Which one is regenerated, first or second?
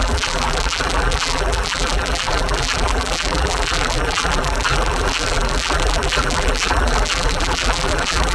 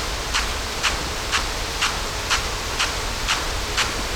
first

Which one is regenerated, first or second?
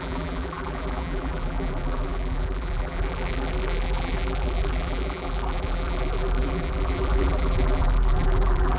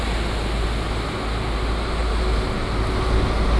first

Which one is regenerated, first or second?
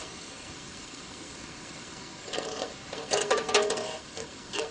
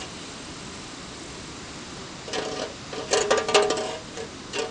first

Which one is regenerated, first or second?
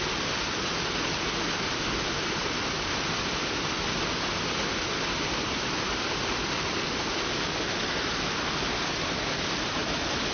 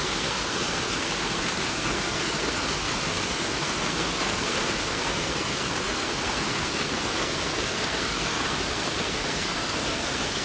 second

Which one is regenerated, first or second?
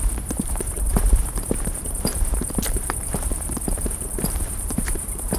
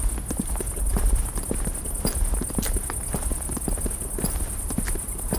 first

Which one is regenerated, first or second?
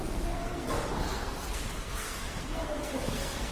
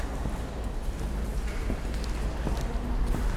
first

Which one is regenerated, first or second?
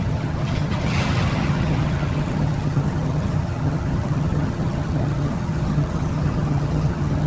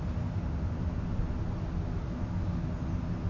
first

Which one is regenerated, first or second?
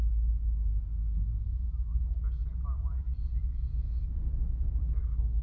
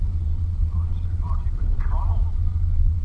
second